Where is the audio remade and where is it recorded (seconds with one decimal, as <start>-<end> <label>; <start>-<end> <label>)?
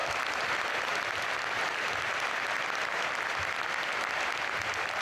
0.0-5.0 recorded